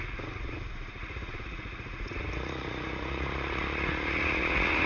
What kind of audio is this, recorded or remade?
remade